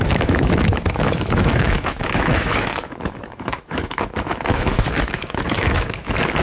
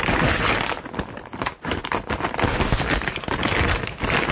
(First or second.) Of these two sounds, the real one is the second